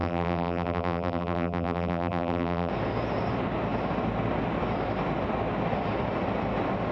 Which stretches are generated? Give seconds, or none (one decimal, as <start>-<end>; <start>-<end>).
0.0-2.7